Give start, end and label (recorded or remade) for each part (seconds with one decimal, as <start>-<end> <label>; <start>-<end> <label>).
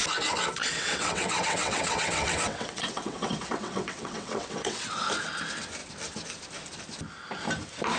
0.0-0.6 recorded; 0.6-4.9 remade; 4.9-8.0 recorded